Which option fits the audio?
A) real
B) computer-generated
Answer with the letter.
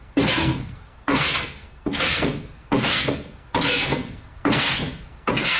B